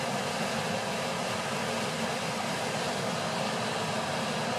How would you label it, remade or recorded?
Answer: recorded